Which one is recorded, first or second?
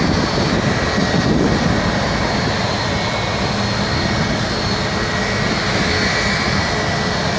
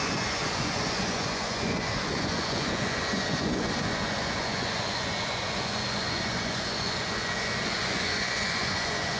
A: first